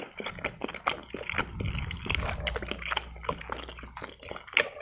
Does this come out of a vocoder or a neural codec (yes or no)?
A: no